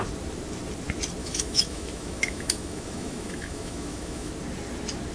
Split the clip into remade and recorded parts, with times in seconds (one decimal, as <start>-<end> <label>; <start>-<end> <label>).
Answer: 0.0-1.2 recorded; 1.2-4.3 remade; 4.3-5.1 recorded